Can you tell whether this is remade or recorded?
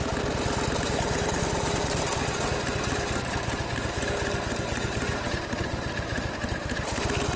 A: recorded